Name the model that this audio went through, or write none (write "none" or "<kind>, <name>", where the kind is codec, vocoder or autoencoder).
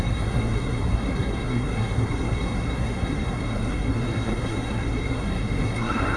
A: codec, SNAC